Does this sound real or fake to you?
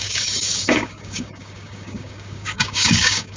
fake